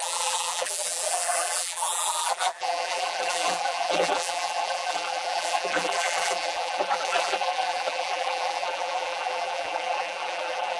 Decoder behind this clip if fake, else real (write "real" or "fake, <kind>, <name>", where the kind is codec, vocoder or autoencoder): fake, vocoder, BigVGAN v2